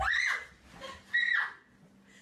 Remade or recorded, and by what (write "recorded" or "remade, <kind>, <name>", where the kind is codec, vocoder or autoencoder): recorded